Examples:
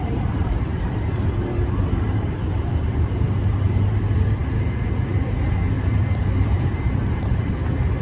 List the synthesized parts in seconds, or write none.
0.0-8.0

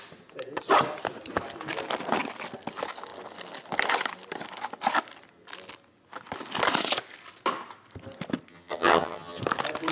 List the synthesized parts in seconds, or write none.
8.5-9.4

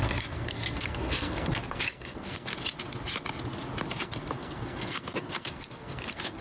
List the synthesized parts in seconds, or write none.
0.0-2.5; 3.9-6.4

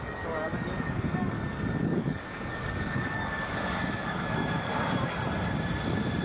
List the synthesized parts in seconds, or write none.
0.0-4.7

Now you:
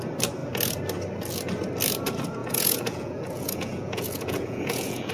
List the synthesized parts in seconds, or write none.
2.4-5.1

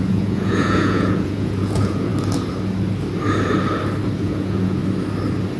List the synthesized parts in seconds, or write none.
0.0-2.1; 4.2-4.8